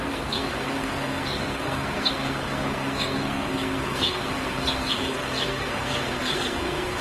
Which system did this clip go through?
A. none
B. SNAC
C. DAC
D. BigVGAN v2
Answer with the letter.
B